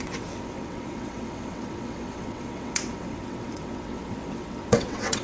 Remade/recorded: remade